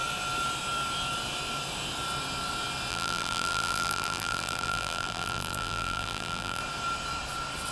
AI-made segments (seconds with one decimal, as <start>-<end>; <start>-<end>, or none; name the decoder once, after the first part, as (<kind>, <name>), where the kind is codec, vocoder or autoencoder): 2.9-6.6 (vocoder, BigVGAN v2)